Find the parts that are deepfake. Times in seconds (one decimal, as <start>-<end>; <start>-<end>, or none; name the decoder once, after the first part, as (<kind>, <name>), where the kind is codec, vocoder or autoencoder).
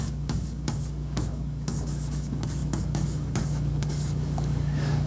0.0-5.1 (codec, DAC)